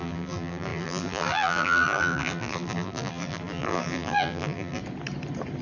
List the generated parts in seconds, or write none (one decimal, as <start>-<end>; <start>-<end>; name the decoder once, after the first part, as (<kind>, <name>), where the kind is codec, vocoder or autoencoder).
0.0-4.8 (vocoder, BigVGAN v2)